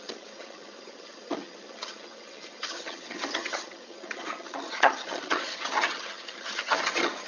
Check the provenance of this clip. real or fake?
fake